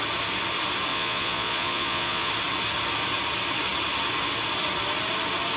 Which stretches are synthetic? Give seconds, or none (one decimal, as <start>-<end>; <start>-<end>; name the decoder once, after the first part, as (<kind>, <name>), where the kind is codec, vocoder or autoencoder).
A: 0.9-2.3 (vocoder, Vocos)